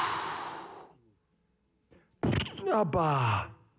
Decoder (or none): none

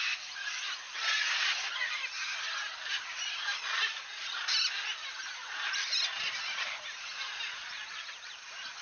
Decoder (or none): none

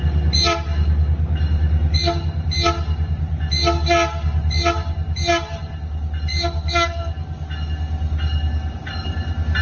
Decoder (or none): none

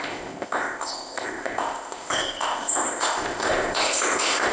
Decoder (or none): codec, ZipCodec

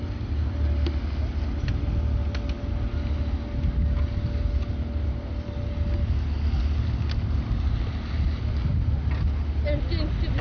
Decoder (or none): none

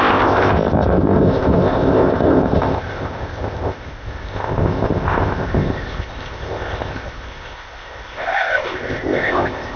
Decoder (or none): codec, ZipCodec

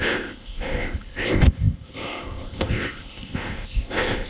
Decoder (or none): codec, ZipCodec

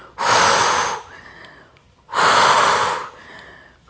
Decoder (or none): none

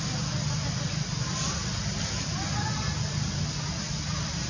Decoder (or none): none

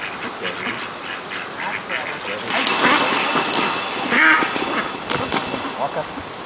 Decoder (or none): none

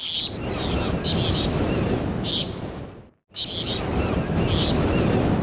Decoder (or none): none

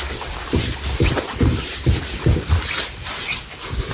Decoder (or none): none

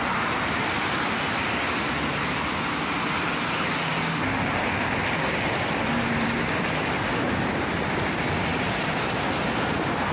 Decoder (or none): none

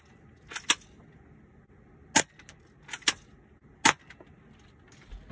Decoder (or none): none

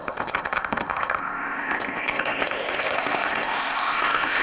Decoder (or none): codec, ZipCodec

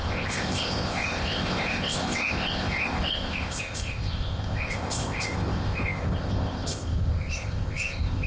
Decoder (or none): codec, ZipCodec